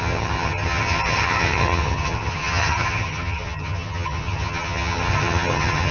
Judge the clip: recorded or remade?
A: remade